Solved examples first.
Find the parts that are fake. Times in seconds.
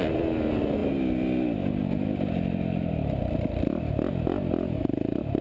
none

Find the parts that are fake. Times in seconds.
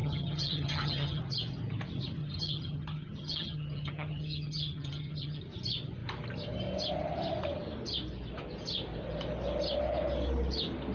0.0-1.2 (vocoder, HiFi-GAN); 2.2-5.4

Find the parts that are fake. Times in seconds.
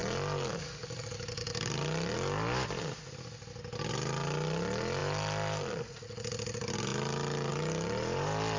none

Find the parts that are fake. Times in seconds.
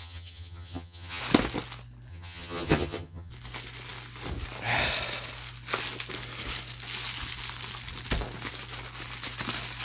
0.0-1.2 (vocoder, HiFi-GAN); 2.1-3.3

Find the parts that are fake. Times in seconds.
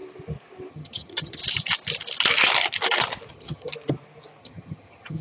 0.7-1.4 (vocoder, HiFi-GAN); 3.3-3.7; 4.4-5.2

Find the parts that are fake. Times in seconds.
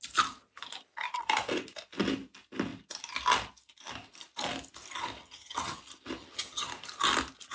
5.2-5.8 (vocoder, HiFi-GAN); 6.2-6.7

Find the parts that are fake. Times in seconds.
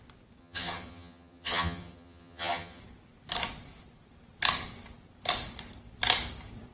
0.4-2.8 (vocoder, HiFi-GAN)